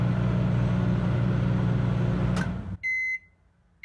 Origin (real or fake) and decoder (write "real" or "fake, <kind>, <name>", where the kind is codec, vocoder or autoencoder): real